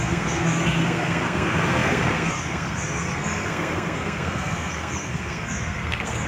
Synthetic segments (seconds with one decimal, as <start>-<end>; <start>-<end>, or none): 0.0-6.3